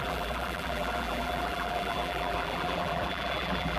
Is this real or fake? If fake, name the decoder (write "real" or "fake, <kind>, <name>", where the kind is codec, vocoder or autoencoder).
fake, vocoder, BigVGAN v2